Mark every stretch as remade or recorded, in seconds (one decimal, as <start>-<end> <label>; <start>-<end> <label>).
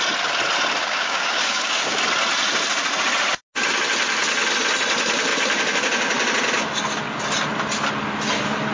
0.0-0.8 recorded; 0.8-2.0 remade; 2.0-8.7 recorded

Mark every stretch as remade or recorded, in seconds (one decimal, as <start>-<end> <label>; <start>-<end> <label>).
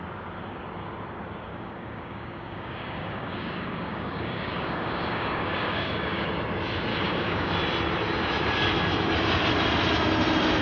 0.0-1.5 recorded; 1.5-6.3 remade; 6.3-6.9 recorded; 6.9-7.5 remade; 7.5-10.6 recorded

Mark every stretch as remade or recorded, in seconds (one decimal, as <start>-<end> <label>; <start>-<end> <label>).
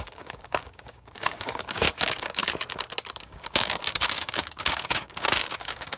0.0-2.4 remade; 2.4-3.2 recorded; 3.2-6.0 remade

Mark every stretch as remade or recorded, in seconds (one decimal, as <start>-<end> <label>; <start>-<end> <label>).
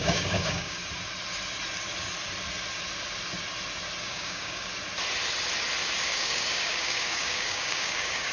0.0-0.8 remade; 0.8-4.0 recorded; 4.0-4.7 remade; 4.7-6.1 recorded; 6.1-8.3 remade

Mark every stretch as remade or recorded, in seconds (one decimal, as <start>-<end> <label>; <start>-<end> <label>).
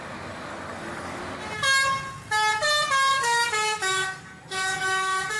0.0-0.5 recorded; 0.5-1.2 remade; 1.2-3.1 recorded; 3.1-5.4 remade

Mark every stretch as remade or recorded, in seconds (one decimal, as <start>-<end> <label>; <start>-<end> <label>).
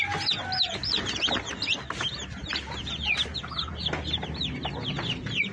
0.0-5.5 recorded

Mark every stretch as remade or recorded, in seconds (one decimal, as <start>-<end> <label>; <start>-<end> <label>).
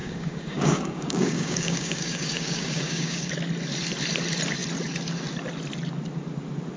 0.0-3.3 remade; 3.3-6.8 recorded